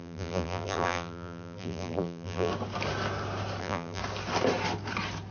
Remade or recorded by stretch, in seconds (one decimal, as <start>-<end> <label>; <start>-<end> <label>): 0.0-2.5 remade; 2.5-3.6 recorded; 3.6-4.0 remade; 4.0-5.3 recorded